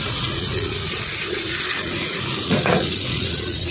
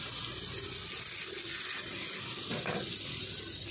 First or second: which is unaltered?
second